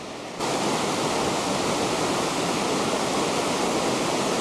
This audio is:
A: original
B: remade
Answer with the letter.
A